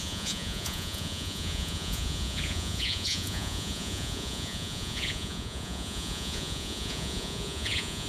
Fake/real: fake